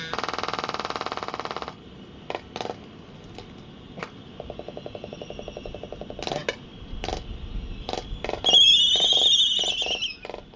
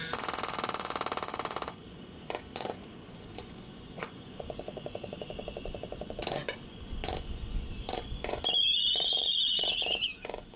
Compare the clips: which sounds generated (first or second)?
second